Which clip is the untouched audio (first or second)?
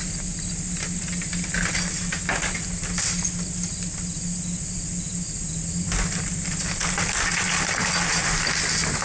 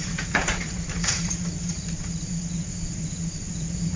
first